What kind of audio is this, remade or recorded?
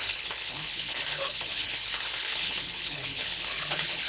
remade